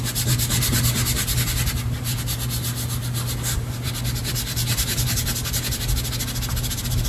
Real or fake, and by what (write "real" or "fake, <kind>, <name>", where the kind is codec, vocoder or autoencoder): real